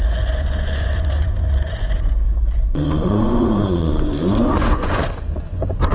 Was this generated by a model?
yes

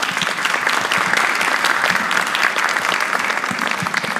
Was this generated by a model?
no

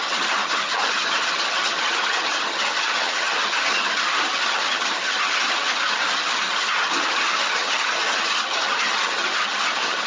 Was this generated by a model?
yes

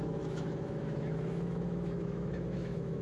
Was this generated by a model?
yes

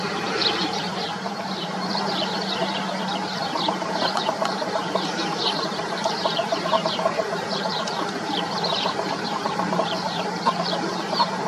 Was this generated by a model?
yes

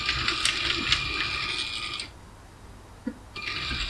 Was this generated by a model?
no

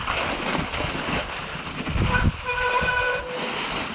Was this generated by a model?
no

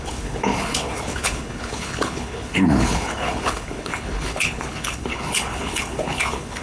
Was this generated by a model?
yes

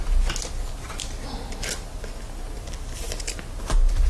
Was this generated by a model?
no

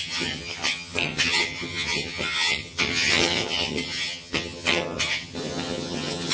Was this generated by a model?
yes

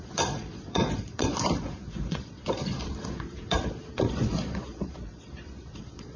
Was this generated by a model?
yes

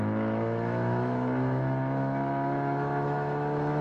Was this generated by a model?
yes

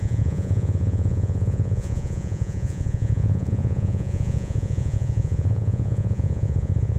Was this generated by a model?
yes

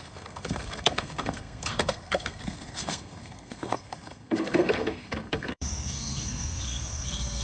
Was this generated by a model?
yes